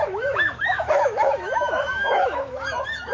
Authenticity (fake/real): fake